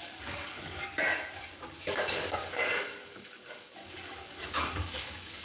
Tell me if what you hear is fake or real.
fake